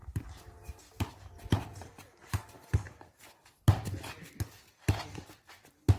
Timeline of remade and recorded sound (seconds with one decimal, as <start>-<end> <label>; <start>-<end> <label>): 0.0-1.1 remade; 1.1-2.2 recorded; 2.2-3.4 remade; 3.4-6.0 recorded